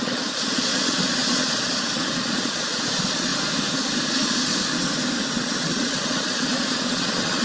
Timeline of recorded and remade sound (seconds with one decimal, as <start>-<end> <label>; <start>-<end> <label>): 0.0-3.3 remade; 3.3-4.1 recorded; 4.1-4.5 remade; 4.5-5.3 recorded; 5.3-7.4 remade